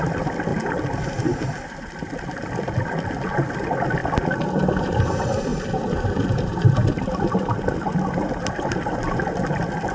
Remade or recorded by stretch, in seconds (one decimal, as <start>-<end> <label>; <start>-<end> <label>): 0.0-0.5 remade; 0.5-1.7 recorded; 1.7-4.0 remade; 4.0-4.8 recorded; 4.8-9.9 remade